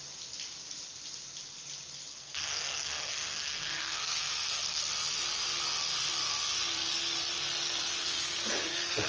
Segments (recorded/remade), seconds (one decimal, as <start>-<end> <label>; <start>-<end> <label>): 0.0-2.1 recorded; 2.1-4.8 remade; 4.8-8.0 recorded; 8.0-8.5 remade; 8.5-9.1 recorded